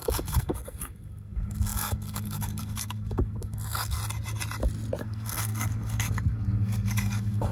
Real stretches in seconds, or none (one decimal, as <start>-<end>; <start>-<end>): 4.0-5.0